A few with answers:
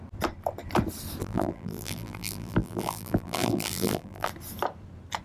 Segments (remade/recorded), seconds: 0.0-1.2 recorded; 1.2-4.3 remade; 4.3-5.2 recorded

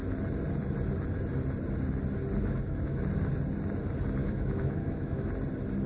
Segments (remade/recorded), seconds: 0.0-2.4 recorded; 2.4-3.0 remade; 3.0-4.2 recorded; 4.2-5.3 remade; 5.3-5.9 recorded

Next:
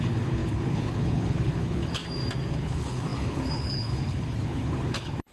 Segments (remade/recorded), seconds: 0.0-2.0 remade; 2.0-2.5 recorded; 2.5-5.3 remade

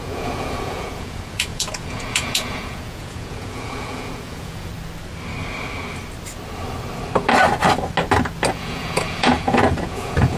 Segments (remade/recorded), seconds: 0.0-4.7 remade; 4.7-8.5 recorded; 8.5-10.4 remade

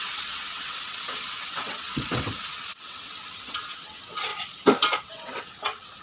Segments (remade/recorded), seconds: 0.0-4.3 remade; 4.3-5.0 recorded; 5.0-6.0 remade

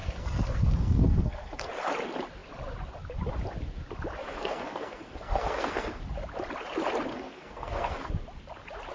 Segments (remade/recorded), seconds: 0.0-1.7 remade; 1.7-4.2 recorded; 4.2-6.0 remade; 6.0-7.1 recorded; 7.1-8.1 remade; 8.1-8.9 recorded

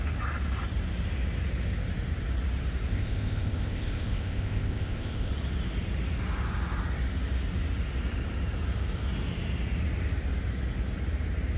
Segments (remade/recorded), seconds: 0.0-2.9 recorded; 2.9-5.3 remade; 5.3-11.6 recorded